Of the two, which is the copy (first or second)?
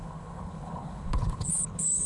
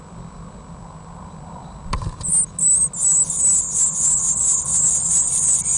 first